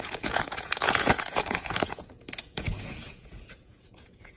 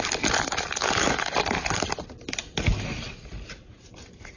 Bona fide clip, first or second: second